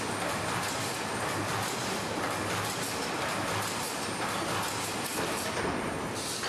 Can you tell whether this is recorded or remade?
recorded